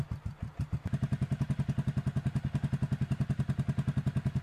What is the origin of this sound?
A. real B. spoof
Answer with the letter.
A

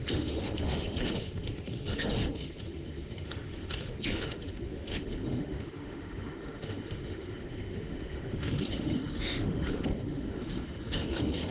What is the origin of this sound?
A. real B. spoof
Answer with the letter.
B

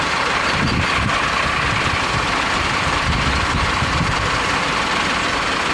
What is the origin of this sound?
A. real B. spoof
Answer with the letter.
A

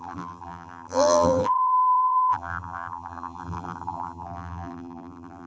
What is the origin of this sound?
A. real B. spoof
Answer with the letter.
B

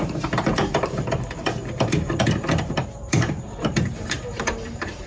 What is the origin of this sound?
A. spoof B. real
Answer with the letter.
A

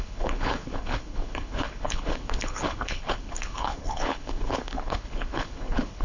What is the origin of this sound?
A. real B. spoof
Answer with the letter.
B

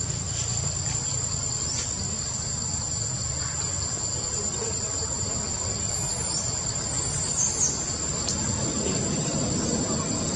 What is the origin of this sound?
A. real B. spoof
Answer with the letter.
A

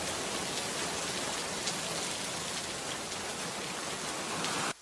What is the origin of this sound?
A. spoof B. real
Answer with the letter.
B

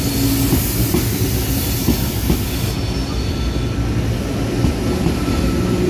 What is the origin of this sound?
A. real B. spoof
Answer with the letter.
A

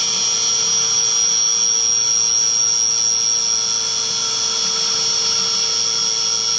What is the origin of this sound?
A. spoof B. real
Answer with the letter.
B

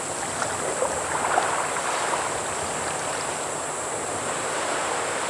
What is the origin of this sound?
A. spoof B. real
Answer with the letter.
B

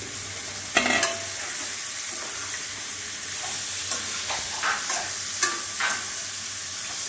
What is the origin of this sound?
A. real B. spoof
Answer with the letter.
A